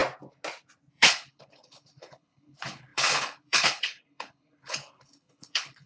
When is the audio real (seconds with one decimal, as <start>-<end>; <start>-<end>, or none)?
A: 0.0-0.9

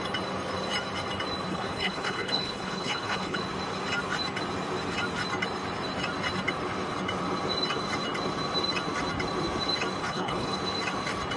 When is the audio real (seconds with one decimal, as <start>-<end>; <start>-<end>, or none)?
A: 0.0-1.5; 3.4-10.0; 10.6-11.4

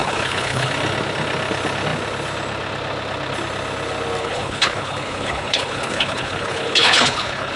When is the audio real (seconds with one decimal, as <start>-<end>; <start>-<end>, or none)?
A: 0.7-4.2

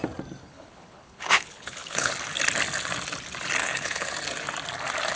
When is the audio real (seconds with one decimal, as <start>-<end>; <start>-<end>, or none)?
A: 0.0-0.4; 2.1-3.6; 4.1-5.2

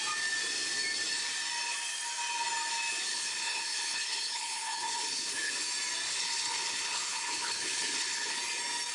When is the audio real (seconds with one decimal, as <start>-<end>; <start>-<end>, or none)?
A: 0.0-3.1; 5.5-6.1; 8.4-8.9